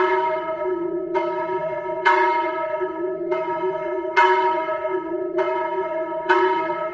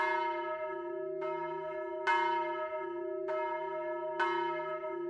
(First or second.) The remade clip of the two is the first